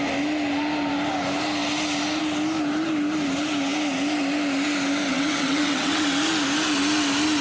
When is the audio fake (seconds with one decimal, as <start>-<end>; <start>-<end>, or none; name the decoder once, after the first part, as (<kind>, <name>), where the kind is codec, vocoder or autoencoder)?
5.1-6.0 (vocoder, WaveNeXt)